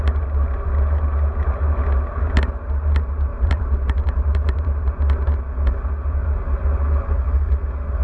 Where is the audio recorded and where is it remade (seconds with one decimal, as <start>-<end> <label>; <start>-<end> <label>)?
0.0-3.3 recorded; 3.3-5.0 remade; 5.0-8.0 recorded